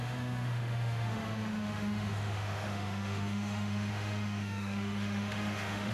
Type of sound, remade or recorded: remade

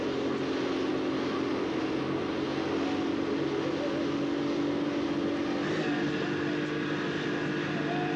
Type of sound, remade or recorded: recorded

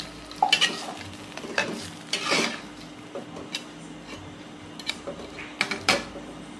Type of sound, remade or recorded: recorded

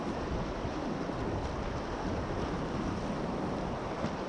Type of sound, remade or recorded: recorded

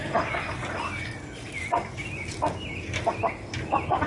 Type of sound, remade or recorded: recorded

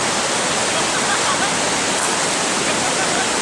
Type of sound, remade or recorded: recorded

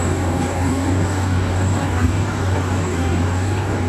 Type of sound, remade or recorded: remade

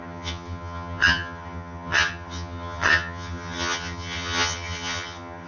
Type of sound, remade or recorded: remade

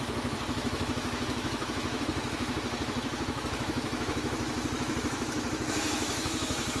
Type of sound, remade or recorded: remade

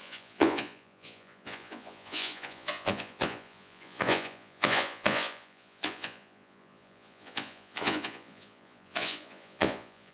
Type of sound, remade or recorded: remade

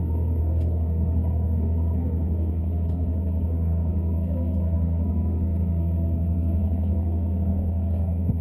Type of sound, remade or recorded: remade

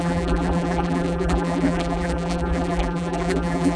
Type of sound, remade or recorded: remade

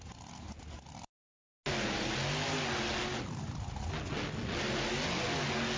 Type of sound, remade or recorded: recorded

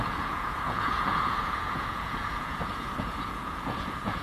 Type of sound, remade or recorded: remade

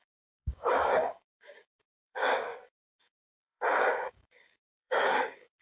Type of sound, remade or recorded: remade